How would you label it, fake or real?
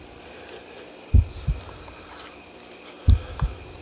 real